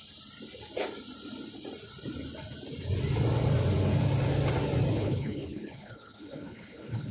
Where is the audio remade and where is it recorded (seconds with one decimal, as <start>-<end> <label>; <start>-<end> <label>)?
0.0-4.9 recorded; 4.9-7.1 remade